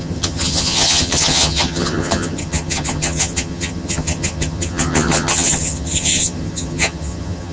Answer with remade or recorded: remade